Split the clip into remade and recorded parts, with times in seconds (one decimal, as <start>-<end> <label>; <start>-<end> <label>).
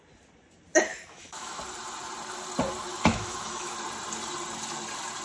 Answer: 0.0-0.9 recorded; 0.9-1.6 remade; 1.6-2.9 recorded; 2.9-3.7 remade; 3.7-5.2 recorded